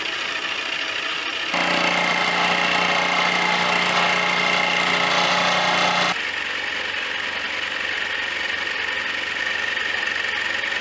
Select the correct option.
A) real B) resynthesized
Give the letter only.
A